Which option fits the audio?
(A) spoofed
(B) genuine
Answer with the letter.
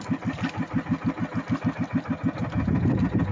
B